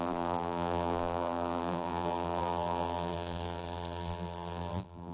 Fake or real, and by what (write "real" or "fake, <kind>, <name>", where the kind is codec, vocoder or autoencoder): fake, vocoder, BigVGAN v2